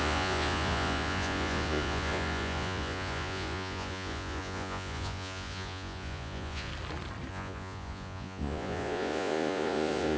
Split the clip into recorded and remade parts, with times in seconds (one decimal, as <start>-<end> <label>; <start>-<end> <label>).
0.0-6.7 remade; 6.7-7.3 recorded; 7.3-10.2 remade